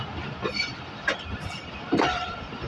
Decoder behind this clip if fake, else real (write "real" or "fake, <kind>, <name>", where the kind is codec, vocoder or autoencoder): real